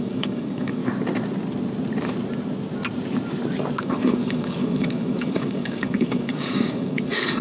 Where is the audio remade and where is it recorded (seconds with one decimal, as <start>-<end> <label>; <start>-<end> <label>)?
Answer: 0.0-0.8 remade; 0.8-3.8 recorded; 3.8-7.4 remade